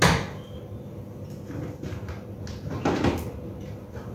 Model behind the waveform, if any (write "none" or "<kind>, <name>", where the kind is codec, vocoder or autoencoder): none